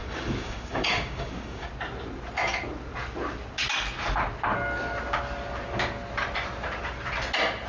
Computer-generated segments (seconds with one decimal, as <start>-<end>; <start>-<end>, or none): 0.0-1.7